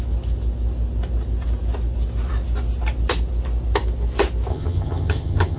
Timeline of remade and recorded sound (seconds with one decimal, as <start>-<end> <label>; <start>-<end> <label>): 0.0-4.5 recorded; 4.5-5.6 remade